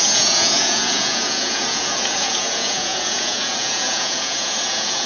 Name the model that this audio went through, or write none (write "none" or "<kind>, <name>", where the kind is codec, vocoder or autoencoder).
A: vocoder, Vocos